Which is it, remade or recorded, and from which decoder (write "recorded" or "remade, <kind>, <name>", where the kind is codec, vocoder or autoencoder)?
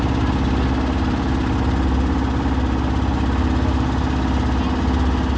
recorded